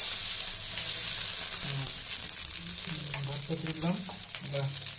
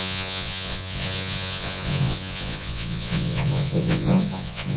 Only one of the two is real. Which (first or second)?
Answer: first